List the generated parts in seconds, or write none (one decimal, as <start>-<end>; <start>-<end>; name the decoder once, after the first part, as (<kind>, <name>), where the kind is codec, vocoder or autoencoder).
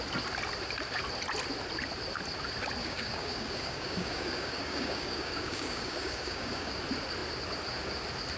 2.8-6.8 (codec, DAC)